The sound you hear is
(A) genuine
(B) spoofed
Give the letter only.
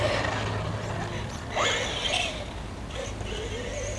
A